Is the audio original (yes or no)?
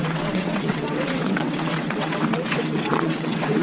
no